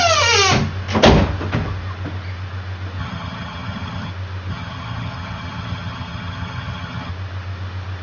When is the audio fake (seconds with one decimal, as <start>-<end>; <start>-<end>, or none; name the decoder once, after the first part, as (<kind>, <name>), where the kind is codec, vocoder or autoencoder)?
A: 3.0-4.1 (vocoder, HiFi-GAN); 4.5-7.1